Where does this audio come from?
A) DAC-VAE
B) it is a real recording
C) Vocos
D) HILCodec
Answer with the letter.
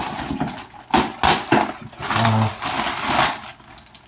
B